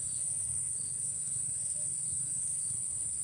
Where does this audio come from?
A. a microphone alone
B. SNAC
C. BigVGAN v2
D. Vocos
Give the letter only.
B